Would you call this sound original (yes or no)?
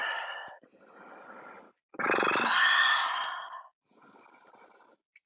yes